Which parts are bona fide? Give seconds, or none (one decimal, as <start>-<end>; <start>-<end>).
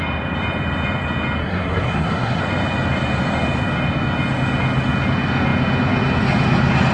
0.0-1.4; 2.4-6.9